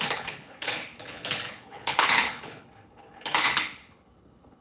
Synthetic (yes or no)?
yes